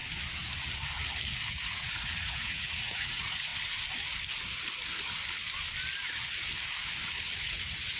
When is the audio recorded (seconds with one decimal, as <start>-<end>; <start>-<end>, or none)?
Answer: 0.0-1.5; 3.5-7.4